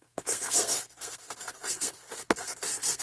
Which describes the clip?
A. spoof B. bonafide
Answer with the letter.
A